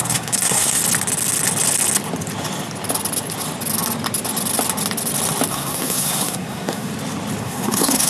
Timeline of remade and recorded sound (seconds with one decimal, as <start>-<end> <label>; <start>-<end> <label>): 0.0-0.8 remade; 0.8-5.5 recorded; 5.5-6.9 remade; 6.9-7.4 recorded; 7.4-8.1 remade